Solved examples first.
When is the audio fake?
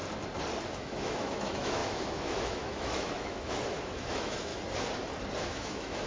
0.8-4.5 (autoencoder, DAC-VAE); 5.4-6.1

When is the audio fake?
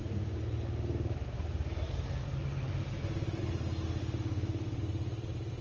4.0-4.8 (autoencoder, DAC-VAE)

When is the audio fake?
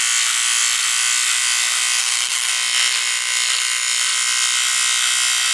2.0-2.5 (codec, SNAC)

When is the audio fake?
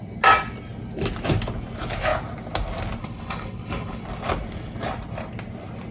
3.0-4.0 (codec, HILCodec)